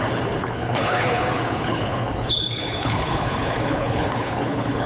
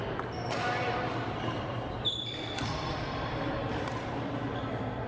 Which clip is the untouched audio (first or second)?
second